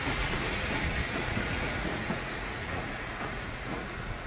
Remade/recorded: remade